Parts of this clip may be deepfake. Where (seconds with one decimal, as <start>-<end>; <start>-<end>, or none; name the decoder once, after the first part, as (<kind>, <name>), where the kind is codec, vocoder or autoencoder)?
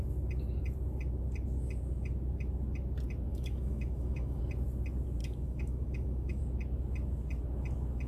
3.3-4.4 (autoencoder, DAC-VAE); 5.2-6.4